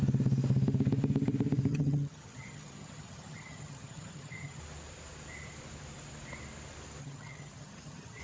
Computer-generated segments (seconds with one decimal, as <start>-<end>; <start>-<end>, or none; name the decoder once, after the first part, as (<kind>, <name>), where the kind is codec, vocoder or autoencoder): 1.7-4.6 (vocoder, HiFi-GAN); 7.0-8.2